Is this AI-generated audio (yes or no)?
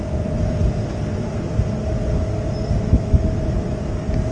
no